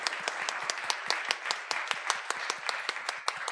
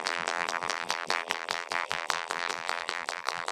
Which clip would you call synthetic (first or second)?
second